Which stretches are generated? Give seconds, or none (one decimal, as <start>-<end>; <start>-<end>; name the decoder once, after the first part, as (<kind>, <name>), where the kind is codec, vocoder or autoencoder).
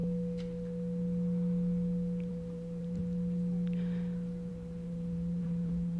2.3-3.0 (vocoder, BigVGAN v2); 4.5-6.0